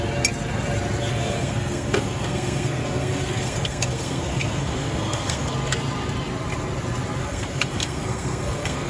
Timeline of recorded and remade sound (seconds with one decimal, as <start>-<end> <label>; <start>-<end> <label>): 0.0-1.1 recorded; 1.1-5.5 remade; 5.5-7.2 recorded; 7.2-8.9 remade